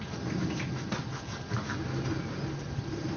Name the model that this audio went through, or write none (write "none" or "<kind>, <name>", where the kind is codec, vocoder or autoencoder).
none